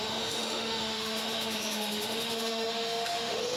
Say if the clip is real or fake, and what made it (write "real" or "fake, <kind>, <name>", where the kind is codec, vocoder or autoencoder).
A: fake, autoencoder, DAC-VAE